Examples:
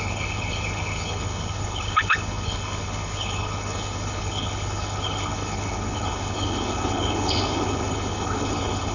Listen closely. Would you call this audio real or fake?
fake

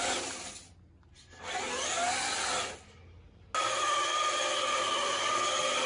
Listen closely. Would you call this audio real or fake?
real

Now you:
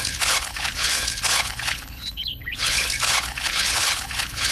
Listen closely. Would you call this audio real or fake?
fake